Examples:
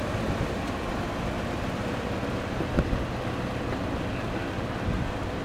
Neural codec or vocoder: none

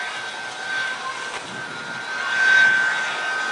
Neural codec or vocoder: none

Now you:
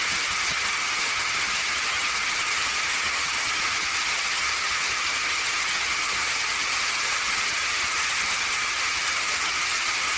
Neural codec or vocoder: vocoder, HiFi-GAN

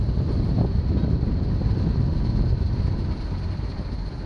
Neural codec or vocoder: none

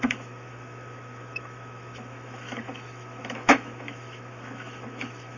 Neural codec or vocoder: autoencoder, DAC-VAE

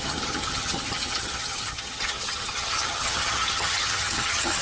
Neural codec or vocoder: vocoder, HiFi-GAN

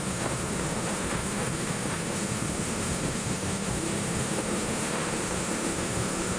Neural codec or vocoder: autoencoder, DAC-VAE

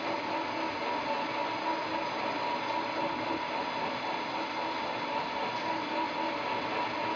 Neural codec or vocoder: none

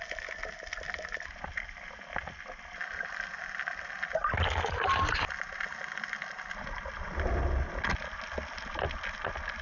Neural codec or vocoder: none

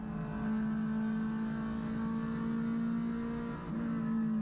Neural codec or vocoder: none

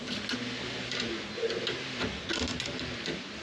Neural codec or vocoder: none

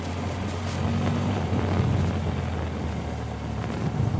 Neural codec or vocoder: none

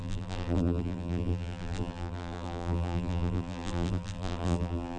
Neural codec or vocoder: vocoder, BigVGAN v2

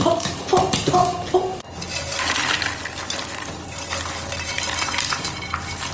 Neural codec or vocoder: none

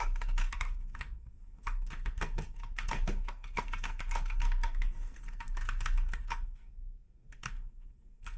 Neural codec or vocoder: codec, SNAC